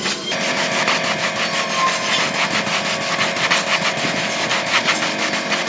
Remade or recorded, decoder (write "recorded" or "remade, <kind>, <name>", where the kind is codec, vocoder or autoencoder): recorded